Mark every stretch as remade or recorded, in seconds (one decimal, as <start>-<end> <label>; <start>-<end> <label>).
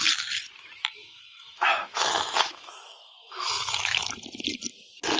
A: 0.0-1.0 recorded; 1.0-4.1 remade; 4.1-5.2 recorded